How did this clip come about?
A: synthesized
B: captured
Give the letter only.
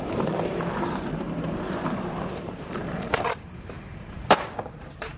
A